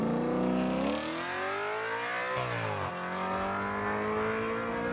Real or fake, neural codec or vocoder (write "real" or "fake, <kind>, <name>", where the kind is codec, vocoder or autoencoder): real